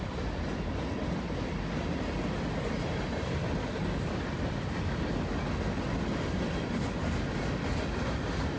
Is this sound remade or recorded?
recorded